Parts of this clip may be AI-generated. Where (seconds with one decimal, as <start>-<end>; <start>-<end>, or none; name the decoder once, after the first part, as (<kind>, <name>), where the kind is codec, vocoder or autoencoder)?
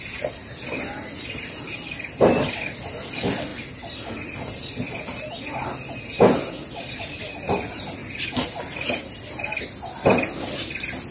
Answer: none